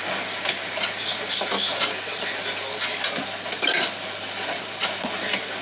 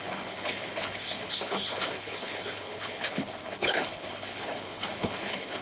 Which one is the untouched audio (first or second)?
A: first